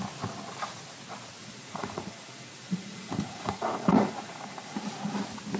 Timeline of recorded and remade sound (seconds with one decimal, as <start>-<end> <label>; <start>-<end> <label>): 0.0-1.4 recorded; 1.4-4.8 remade; 4.8-5.6 recorded